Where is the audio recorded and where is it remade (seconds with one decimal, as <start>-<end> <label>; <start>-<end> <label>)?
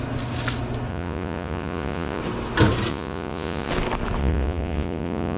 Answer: 0.0-0.9 recorded; 0.9-2.2 remade; 2.2-2.9 recorded; 2.9-3.7 remade; 3.7-4.2 recorded; 4.2-5.4 remade